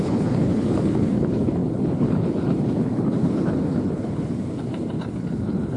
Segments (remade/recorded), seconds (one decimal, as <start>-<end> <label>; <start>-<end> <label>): 0.0-5.8 remade